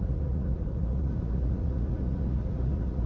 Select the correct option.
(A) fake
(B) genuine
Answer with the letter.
A